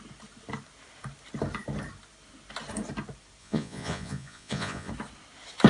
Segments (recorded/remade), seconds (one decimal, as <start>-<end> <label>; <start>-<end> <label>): 0.0-3.4 recorded; 3.4-4.9 remade; 4.9-5.7 recorded